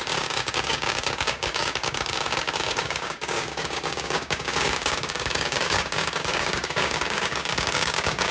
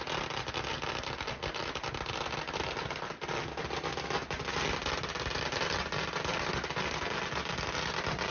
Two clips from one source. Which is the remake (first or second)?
first